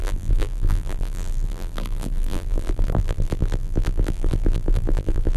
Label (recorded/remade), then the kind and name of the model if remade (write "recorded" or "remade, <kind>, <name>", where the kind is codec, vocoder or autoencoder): remade, vocoder, BigVGAN v2